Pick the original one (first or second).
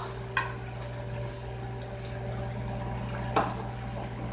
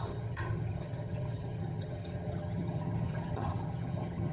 first